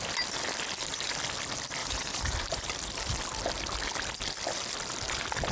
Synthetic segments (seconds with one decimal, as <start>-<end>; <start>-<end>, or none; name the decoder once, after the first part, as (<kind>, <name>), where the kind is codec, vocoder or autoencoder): 1.8-2.7 (vocoder, BigVGAN v2)